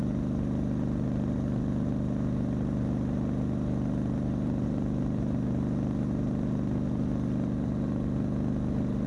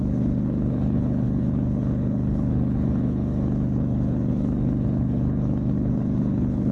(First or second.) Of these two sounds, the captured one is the first